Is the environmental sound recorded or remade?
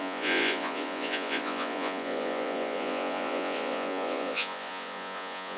remade